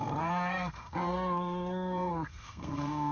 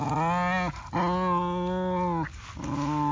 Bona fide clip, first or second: second